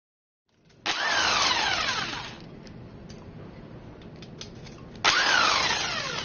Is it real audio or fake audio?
real